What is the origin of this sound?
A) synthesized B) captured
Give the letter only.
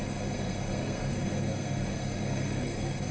A